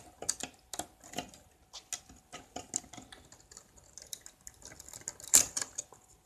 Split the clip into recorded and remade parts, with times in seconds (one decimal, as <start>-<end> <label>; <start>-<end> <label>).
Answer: 0.0-6.3 recorded